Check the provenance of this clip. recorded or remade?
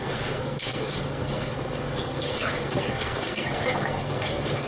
remade